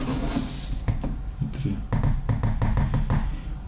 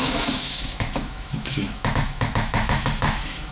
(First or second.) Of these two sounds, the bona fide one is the first